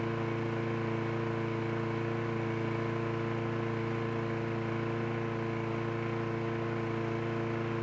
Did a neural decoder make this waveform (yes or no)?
no